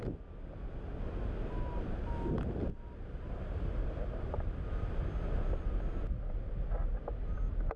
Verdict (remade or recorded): recorded